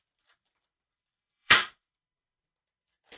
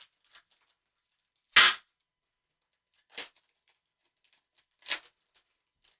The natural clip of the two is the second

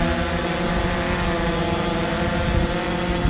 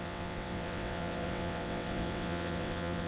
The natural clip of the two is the first